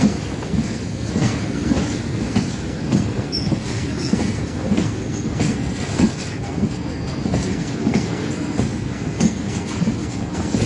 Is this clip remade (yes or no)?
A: yes